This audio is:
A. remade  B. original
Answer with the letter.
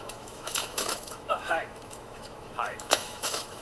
A